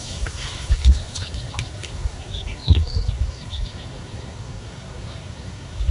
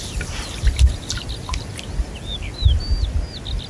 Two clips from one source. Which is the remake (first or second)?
first